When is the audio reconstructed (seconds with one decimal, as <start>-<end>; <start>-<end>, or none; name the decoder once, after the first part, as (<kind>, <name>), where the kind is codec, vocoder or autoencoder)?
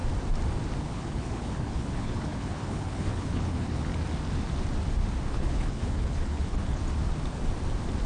0.8-3.9 (codec, HILCodec); 5.3-6.8